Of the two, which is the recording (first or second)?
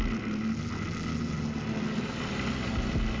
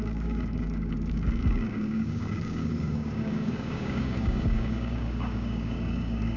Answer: first